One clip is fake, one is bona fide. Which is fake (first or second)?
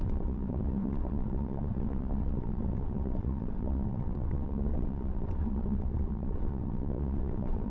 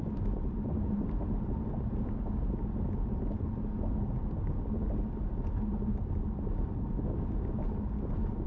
first